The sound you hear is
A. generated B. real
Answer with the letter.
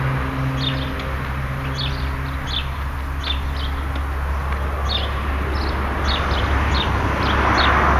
B